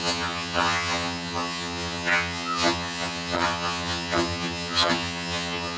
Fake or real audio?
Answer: fake